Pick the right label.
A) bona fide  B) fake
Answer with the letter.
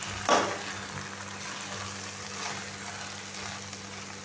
A